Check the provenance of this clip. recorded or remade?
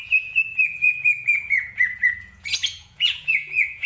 remade